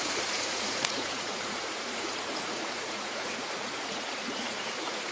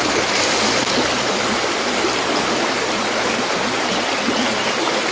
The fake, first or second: first